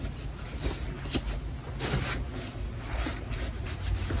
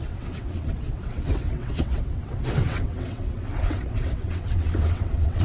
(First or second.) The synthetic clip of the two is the second